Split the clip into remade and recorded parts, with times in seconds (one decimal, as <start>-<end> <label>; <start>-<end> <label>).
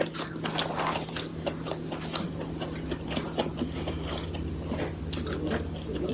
0.0-6.1 recorded